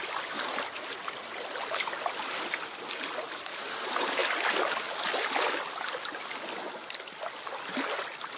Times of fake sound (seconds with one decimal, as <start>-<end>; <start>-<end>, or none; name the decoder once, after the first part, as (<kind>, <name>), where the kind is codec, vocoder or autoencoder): 1.2-2.3 (vocoder, BigVGAN v2); 4.2-5.1